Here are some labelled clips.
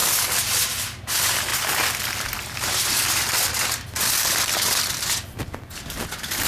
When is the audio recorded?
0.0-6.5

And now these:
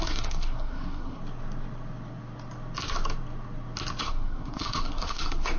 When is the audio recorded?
1.2-4.0

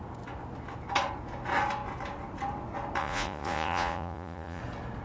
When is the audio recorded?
0.0-3.0; 4.6-5.0

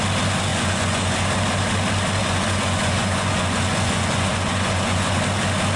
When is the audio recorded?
0.0-0.5; 1.3-2.2; 5.2-5.8

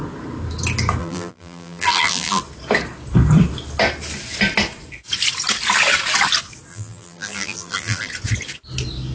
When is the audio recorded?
0.0-1.0; 2.4-6.7; 8.1-9.1

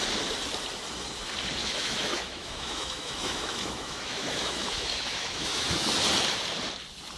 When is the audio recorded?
0.0-1.6; 5.9-7.2

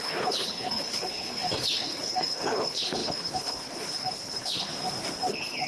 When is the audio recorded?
4.7-5.3

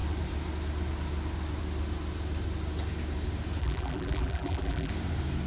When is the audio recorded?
0.0-3.6; 4.9-5.5